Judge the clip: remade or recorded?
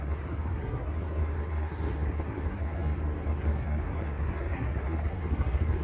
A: remade